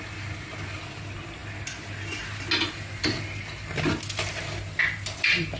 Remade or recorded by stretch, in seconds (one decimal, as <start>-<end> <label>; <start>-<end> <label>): 0.0-5.6 recorded